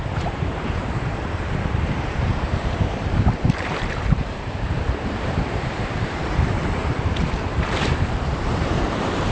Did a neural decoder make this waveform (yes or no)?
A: yes